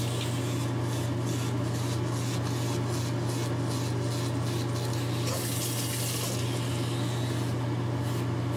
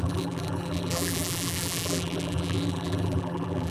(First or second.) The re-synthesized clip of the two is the second